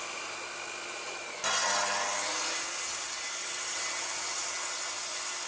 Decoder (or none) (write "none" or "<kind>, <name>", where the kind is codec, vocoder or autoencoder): none